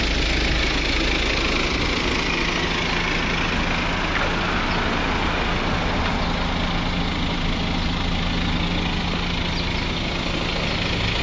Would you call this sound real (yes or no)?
yes